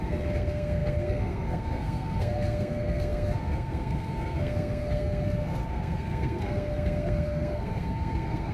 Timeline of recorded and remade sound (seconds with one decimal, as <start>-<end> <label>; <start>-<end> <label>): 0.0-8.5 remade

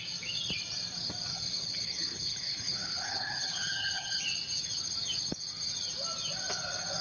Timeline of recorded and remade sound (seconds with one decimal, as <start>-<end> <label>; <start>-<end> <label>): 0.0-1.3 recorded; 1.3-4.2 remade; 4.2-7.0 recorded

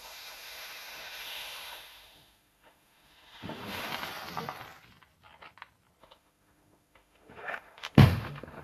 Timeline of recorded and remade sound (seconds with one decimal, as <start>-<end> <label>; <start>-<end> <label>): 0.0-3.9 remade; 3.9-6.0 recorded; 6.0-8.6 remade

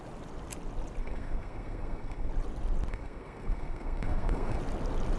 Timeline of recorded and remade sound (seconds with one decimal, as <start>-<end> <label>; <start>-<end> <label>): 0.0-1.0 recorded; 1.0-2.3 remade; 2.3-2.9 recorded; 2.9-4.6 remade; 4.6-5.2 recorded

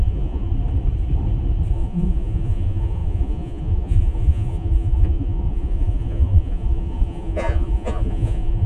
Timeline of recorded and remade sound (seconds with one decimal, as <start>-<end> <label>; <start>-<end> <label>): 0.0-0.5 remade; 0.5-1.7 recorded; 1.7-8.7 remade